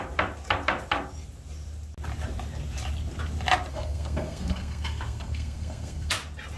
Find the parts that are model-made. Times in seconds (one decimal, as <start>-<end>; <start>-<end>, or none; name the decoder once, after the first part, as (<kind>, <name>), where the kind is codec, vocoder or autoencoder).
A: 3.7-6.1 (codec, SNAC)